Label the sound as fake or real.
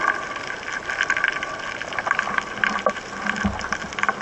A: real